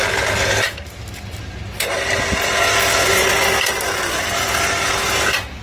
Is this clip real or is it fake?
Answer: real